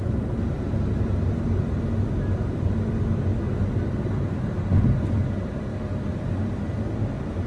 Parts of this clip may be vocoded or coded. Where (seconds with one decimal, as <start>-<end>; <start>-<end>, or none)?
none